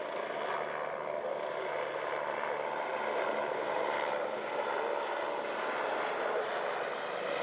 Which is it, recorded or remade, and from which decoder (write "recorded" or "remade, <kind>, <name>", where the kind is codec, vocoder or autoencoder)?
recorded